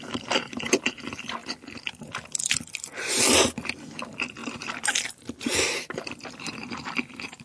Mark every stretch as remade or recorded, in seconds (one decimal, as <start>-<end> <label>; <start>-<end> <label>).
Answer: 0.0-1.4 remade; 1.4-2.0 recorded; 2.0-7.4 remade